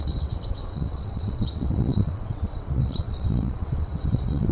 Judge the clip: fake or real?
fake